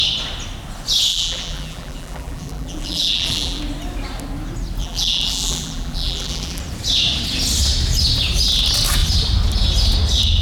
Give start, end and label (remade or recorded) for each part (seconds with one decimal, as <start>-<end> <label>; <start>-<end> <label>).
0.0-1.1 recorded; 1.1-3.6 remade; 3.6-4.8 recorded; 4.8-6.6 remade; 6.6-10.4 recorded